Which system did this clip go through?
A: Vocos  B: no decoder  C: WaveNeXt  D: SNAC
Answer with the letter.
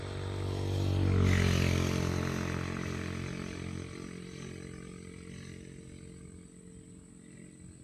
B